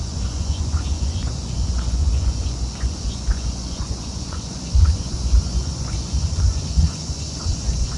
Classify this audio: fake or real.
fake